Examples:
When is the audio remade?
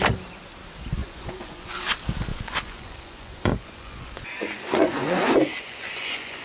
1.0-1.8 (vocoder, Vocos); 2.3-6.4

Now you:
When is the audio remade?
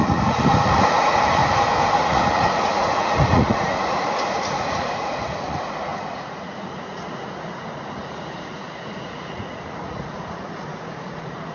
0.0-1.4 (vocoder, Vocos); 2.0-11.5